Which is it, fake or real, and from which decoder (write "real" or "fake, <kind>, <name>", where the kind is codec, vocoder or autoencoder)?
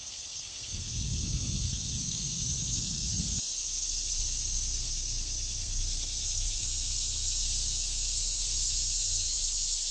fake, codec, SNAC